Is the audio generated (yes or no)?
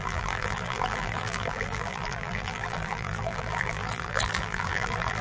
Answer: yes